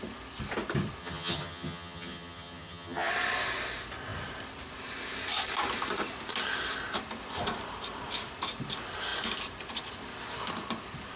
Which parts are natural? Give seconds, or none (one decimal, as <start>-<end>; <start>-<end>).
0.0-1.0; 3.1-11.2